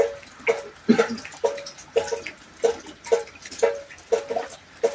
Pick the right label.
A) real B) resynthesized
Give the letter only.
A